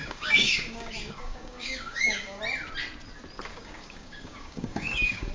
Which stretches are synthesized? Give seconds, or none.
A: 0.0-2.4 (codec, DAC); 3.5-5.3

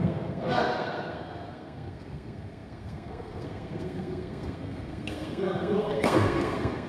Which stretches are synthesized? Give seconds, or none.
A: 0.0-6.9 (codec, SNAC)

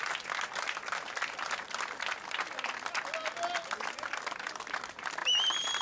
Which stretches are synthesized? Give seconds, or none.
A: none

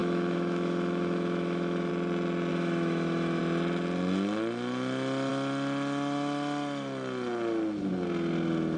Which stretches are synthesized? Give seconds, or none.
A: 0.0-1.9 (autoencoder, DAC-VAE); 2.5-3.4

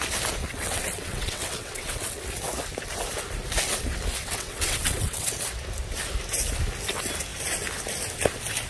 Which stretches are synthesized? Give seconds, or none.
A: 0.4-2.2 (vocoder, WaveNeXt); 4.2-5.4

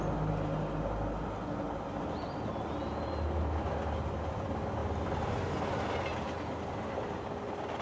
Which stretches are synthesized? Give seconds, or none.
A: none